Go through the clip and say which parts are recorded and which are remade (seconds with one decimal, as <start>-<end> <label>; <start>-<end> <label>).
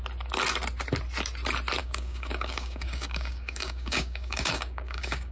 0.0-1.8 recorded; 1.8-5.3 remade